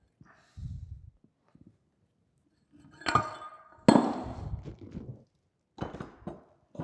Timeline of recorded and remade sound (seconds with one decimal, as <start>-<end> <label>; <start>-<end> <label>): 0.0-6.8 recorded